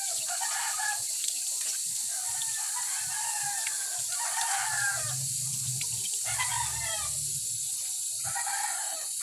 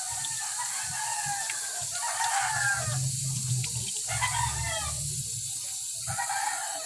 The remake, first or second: first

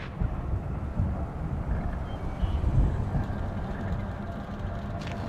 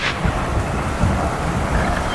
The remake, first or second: second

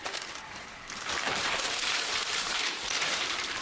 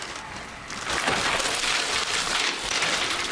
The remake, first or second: first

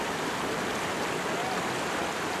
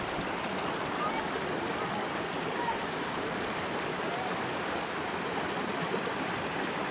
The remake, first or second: second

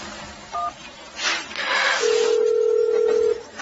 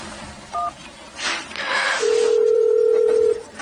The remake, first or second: second